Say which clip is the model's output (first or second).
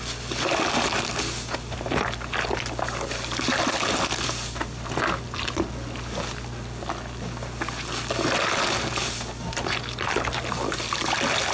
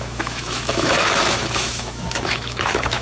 second